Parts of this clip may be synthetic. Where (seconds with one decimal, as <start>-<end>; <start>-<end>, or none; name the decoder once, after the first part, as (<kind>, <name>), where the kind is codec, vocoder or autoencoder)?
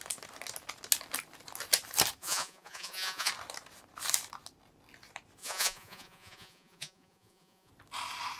2.2-3.3 (vocoder, Vocos); 5.4-7.7